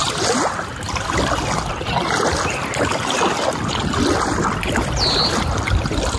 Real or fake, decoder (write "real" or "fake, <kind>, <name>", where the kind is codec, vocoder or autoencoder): real